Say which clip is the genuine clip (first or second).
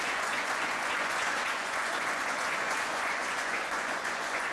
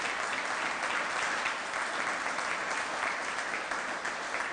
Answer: second